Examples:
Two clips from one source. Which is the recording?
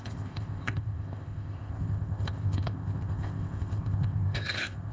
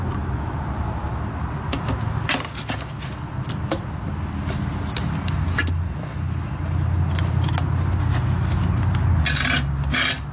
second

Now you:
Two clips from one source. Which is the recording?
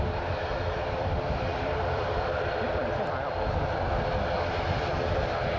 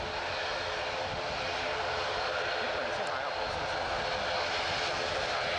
second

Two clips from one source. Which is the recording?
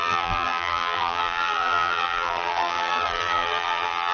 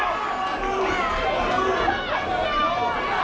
second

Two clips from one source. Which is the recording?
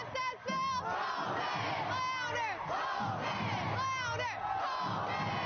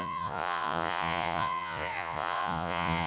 first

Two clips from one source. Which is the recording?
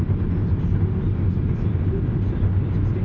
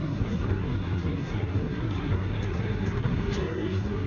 first